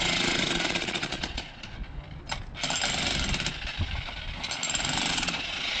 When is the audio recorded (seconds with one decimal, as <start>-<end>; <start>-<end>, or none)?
1.8-5.1